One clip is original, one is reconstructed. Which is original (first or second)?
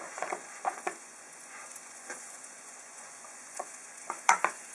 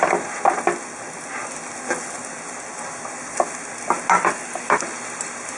second